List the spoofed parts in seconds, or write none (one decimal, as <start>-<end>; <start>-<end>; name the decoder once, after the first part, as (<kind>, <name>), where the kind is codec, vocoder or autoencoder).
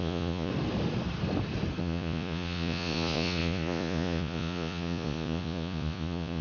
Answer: 0.0-0.5 (vocoder, Vocos); 1.8-6.4